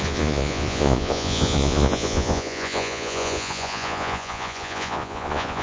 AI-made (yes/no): yes